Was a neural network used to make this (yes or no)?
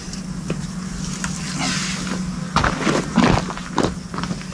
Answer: no